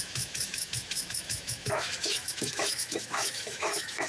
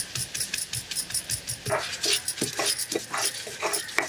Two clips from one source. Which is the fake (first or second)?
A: first